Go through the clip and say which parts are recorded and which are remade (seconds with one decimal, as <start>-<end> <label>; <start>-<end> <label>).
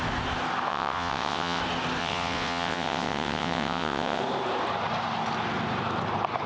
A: 0.0-0.7 recorded; 0.7-1.6 remade; 1.6-2.0 recorded; 2.0-4.2 remade; 4.2-6.5 recorded